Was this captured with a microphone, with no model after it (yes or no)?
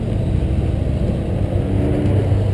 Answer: yes